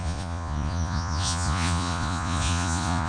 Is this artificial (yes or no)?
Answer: yes